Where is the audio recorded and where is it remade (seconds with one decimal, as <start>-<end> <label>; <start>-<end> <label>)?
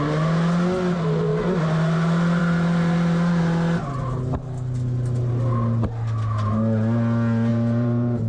0.0-7.5 recorded; 7.5-8.3 remade